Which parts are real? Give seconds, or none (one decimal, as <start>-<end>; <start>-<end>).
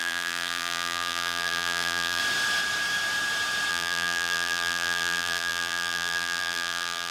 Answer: 2.2-3.7